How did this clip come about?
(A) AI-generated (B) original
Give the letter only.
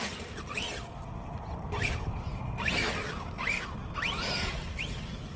B